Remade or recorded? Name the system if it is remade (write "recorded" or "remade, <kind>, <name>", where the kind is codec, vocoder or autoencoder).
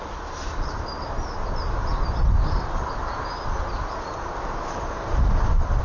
recorded